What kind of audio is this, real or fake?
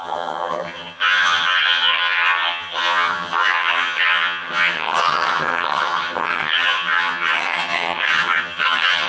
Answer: fake